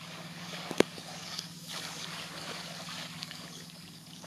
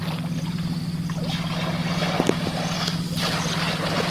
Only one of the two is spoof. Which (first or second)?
first